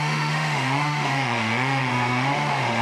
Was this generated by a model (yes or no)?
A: yes